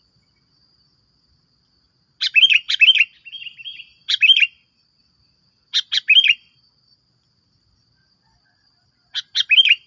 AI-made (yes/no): no